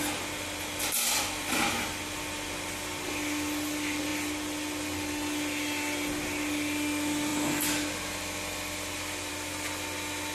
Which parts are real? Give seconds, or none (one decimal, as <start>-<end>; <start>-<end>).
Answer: 0.0-10.3